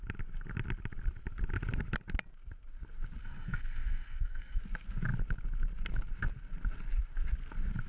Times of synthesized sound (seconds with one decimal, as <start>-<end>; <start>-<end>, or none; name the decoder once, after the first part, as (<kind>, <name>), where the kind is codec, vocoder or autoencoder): 3.2-4.6 (codec, SNAC)